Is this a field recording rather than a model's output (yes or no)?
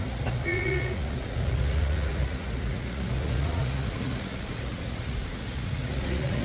no